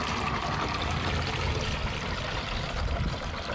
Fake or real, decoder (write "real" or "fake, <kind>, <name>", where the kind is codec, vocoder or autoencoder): real